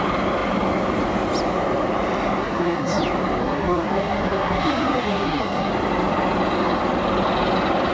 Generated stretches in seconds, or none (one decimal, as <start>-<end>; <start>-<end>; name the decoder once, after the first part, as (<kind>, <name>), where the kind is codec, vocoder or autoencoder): 2.4-3.0 (codec, SNAC); 3.4-5.7